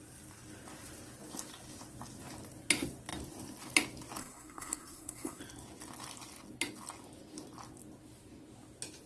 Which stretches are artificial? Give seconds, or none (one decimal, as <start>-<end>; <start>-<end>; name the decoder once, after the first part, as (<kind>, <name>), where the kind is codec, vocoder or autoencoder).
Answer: 4.2-5.4 (codec, SNAC)